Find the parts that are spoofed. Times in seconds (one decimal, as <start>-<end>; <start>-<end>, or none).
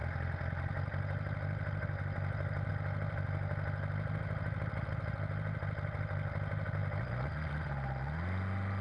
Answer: none